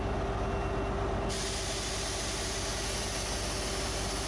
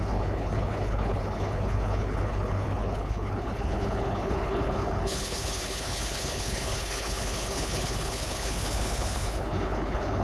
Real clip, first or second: first